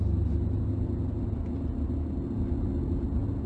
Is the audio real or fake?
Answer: real